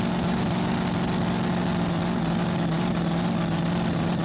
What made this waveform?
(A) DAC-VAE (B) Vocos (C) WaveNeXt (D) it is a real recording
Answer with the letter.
D